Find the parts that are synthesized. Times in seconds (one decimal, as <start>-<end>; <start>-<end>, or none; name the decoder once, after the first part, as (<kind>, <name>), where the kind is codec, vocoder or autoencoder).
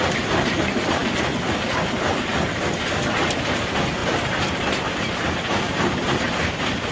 0.0-1.0 (vocoder, BigVGAN v2); 1.7-2.3; 3.5-6.9